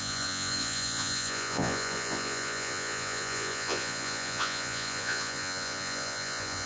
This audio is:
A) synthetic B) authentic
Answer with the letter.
A